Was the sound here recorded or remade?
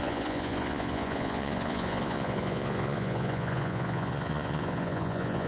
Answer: remade